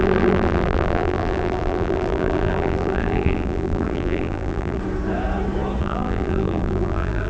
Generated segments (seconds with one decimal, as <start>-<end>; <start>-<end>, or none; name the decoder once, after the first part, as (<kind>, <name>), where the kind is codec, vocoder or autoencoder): 0.0-4.8 (vocoder, BigVGAN v2); 5.8-7.3